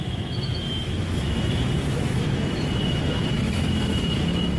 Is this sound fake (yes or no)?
yes